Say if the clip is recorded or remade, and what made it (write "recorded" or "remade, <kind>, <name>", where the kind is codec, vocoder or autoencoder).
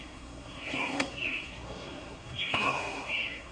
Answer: remade, codec, SNAC